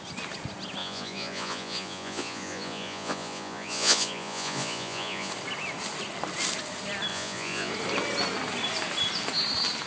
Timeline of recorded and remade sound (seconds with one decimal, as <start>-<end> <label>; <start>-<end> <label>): 0.0-0.8 recorded; 0.8-5.3 remade; 5.3-7.1 recorded; 7.1-7.7 remade; 7.7-9.9 recorded